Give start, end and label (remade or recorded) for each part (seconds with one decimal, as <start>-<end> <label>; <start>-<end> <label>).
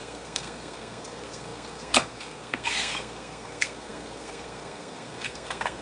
0.0-5.8 remade